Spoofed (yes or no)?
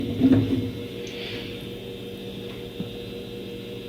no